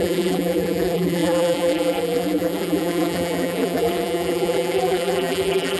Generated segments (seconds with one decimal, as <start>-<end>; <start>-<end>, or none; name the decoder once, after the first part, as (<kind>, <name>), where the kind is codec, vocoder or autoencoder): 0.0-5.8 (vocoder, BigVGAN v2)